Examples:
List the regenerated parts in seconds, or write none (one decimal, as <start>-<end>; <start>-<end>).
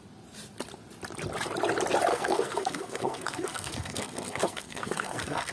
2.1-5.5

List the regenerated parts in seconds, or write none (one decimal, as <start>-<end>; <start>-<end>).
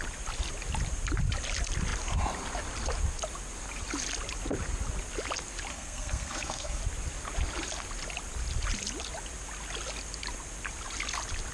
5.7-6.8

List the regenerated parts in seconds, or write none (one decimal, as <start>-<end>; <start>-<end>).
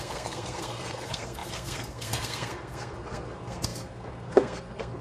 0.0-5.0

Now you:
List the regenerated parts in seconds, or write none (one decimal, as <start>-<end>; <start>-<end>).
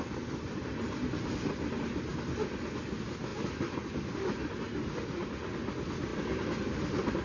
none